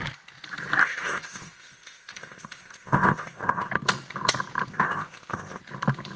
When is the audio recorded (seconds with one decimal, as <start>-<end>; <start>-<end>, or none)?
0.0-0.8; 3.7-4.7; 5.6-6.2

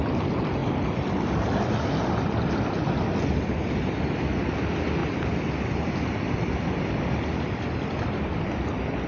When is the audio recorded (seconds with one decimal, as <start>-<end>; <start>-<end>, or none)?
0.6-3.1

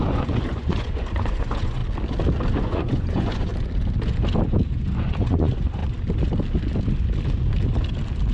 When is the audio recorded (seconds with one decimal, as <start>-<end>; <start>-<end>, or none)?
1.8-2.5; 3.5-4.7; 5.8-8.3

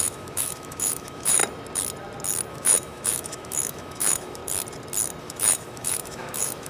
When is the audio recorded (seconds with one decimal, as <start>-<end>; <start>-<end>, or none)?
1.4-2.5; 4.4-5.2